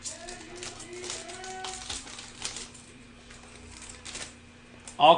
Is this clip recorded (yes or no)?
yes